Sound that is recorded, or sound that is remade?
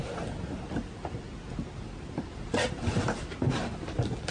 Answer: recorded